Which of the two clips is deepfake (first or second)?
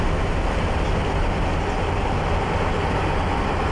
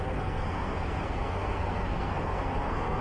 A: second